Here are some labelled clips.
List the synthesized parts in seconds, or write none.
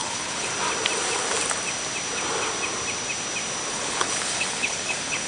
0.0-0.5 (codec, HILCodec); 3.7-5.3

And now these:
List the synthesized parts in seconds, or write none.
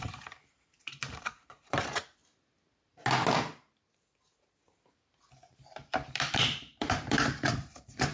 0.0-2.2 (vocoder, BigVGAN v2); 5.3-8.1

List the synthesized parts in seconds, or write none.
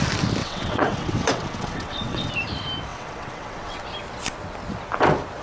0.4-2.3 (vocoder, WaveNeXt); 2.9-3.8